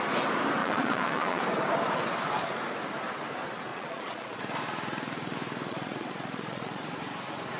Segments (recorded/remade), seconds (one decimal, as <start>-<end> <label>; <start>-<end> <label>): 0.0-0.6 recorded; 0.6-1.4 remade; 1.4-3.7 recorded; 3.7-4.4 remade; 4.4-5.7 recorded; 5.7-6.8 remade; 6.8-7.6 recorded